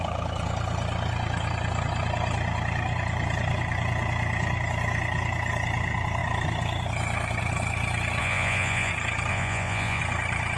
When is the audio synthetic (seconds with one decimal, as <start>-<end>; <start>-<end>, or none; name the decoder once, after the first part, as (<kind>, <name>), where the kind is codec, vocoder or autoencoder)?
8.2-8.9 (vocoder, Vocos); 9.3-10.0